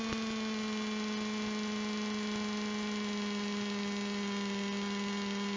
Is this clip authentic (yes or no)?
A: yes